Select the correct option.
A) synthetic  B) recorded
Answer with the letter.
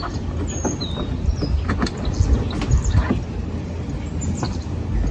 B